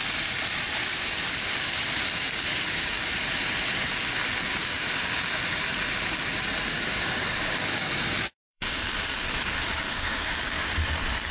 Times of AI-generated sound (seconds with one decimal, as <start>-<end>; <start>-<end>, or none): 0.8-3.1; 4.6-5.3; 6.7-10.9